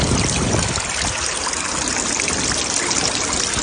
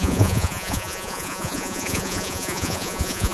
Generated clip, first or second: second